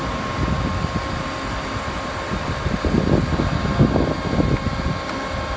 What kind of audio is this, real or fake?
real